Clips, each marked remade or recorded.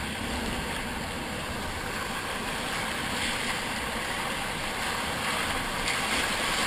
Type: recorded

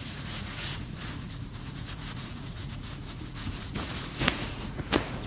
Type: remade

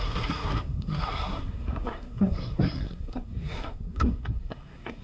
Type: remade